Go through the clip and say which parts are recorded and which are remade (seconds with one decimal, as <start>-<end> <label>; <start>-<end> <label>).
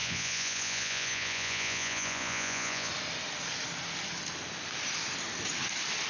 0.0-2.9 remade; 2.9-6.1 recorded